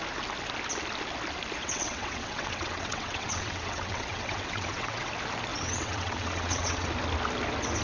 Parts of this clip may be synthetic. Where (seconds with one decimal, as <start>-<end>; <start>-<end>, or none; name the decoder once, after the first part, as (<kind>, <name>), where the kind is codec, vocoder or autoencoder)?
1.6-5.1 (vocoder, WaveNeXt); 5.5-6.9